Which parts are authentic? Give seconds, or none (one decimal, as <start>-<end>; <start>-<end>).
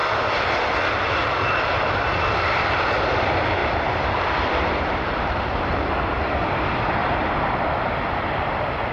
7.0-8.3